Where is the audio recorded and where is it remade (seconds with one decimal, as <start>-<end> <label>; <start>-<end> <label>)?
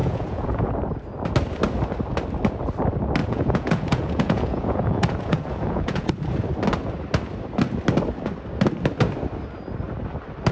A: 0.0-0.7 remade; 0.7-3.2 recorded; 3.2-6.1 remade; 6.1-10.5 recorded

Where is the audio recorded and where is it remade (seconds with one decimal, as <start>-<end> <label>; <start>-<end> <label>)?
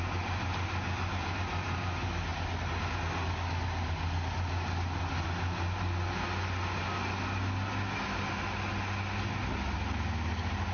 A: 0.0-10.7 recorded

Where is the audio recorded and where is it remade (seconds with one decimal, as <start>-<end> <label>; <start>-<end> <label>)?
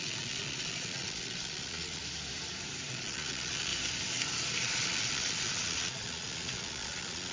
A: 0.0-2.0 remade; 2.0-2.9 recorded; 2.9-3.7 remade; 3.7-4.6 recorded; 4.6-7.3 remade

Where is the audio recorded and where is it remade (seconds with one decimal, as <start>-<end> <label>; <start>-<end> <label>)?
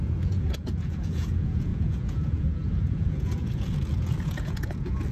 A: 0.0-5.1 remade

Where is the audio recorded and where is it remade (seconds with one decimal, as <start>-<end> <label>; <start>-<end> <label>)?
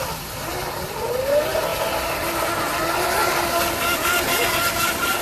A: 0.0-5.2 recorded